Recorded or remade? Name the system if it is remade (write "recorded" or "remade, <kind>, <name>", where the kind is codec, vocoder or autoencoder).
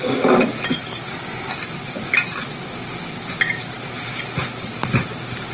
recorded